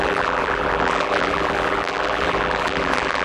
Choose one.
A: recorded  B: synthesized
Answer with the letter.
B